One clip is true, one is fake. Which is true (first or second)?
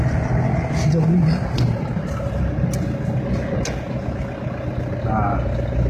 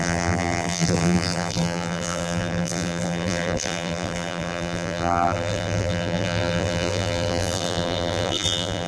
first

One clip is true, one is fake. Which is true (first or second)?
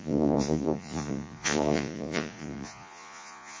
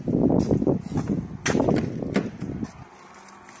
second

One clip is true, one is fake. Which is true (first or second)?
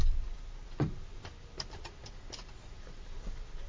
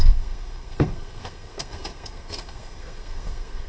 first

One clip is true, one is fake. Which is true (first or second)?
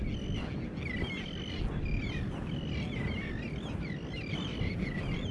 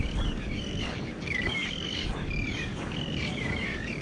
first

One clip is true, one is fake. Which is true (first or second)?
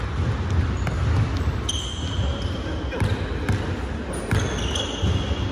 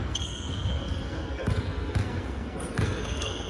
first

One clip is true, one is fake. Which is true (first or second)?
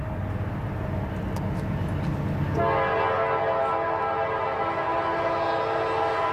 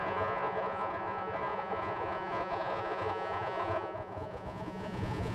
first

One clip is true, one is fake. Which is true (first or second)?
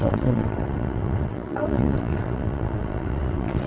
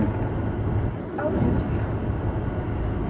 second